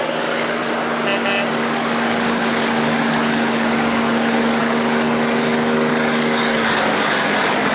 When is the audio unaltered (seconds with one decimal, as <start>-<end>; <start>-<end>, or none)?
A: 0.6-1.5